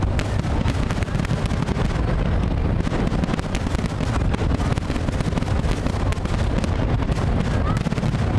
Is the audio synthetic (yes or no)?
no